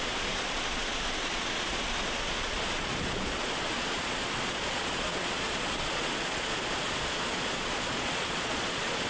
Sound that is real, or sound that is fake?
fake